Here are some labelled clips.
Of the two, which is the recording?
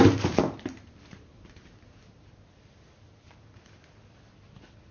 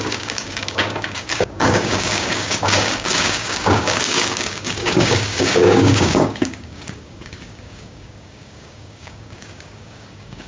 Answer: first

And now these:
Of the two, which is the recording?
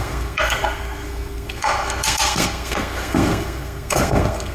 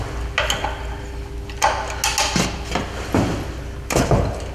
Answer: second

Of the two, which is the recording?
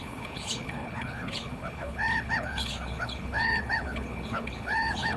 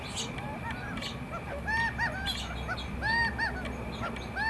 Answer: second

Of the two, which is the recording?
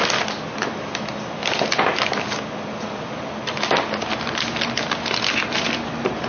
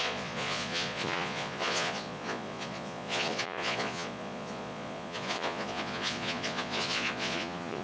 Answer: first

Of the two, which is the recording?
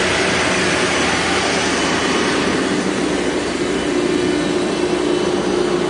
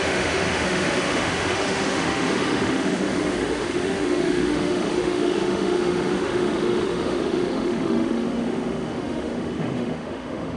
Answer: first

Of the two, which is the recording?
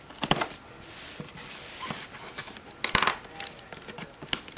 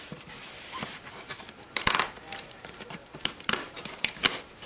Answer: first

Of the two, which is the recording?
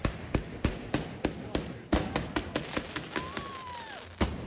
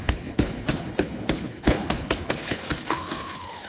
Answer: first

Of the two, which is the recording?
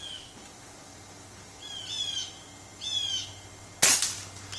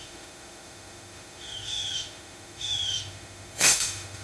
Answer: first